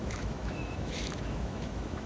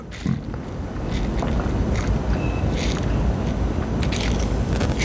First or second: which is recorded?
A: second